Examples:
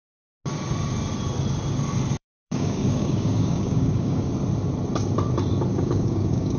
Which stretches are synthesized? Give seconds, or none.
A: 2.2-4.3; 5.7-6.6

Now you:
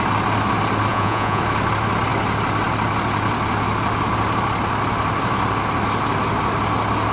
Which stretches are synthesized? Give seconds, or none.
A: 0.9-1.4

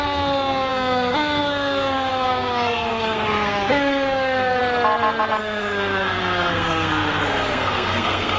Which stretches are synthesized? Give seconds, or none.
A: 0.0-4.6; 5.4-8.4

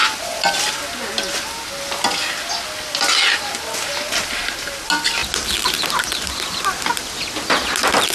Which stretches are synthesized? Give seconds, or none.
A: none

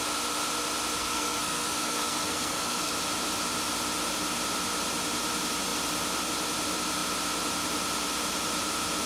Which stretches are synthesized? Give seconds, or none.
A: 1.0-2.9